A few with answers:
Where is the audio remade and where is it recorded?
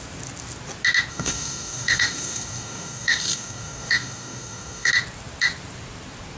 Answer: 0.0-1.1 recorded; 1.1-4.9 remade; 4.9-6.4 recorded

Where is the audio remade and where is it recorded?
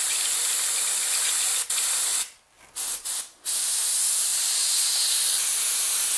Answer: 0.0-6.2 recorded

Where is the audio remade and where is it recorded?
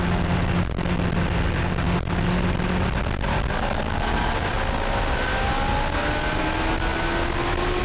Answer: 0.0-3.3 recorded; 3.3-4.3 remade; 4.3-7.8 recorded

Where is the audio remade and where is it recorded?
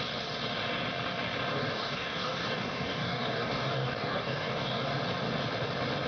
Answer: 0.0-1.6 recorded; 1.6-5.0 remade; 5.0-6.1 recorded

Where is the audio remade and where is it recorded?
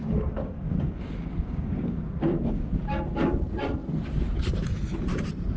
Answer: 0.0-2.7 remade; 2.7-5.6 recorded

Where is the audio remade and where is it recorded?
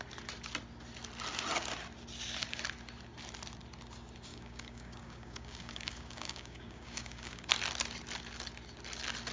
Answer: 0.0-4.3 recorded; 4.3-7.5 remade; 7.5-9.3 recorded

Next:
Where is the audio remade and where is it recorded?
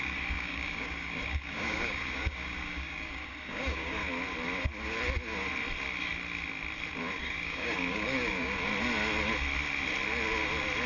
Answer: 0.0-4.0 remade; 4.0-7.2 recorded; 7.2-8.7 remade; 8.7-10.9 recorded